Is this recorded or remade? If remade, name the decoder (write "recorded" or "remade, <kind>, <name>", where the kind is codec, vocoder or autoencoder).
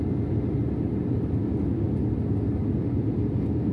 recorded